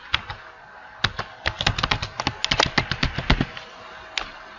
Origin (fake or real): real